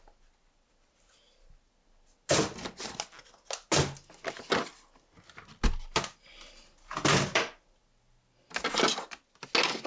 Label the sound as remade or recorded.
recorded